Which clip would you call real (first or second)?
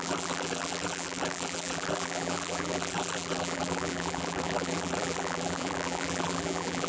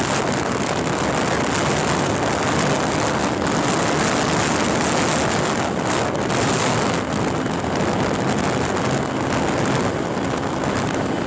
second